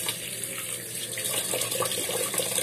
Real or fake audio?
fake